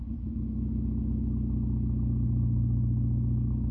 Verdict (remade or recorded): recorded